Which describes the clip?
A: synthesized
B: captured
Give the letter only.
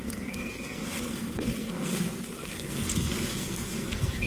A